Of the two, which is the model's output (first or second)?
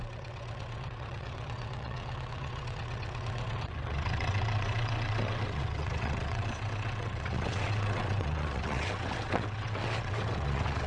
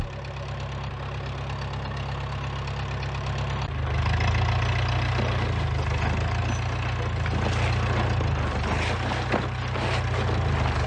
first